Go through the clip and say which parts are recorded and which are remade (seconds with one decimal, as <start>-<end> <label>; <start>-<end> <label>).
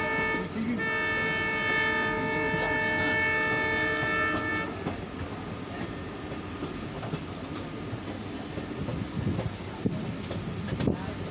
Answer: 0.0-11.3 recorded